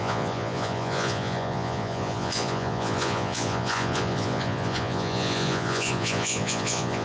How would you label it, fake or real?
fake